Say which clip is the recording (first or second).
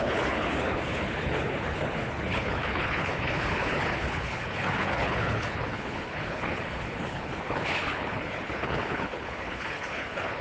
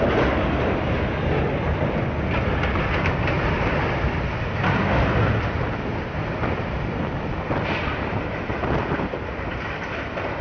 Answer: second